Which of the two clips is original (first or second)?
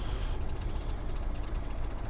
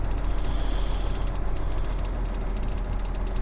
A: second